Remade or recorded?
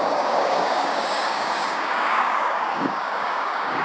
remade